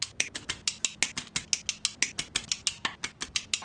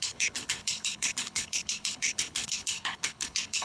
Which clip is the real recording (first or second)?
first